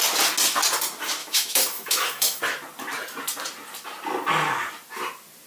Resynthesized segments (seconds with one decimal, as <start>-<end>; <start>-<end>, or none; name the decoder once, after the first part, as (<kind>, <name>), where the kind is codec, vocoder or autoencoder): 1.2-2.4 (autoencoder, DAC-VAE)